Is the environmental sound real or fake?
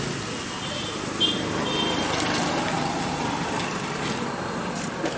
real